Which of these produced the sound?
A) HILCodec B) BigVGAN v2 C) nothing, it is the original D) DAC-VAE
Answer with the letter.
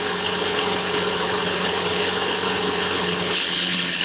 A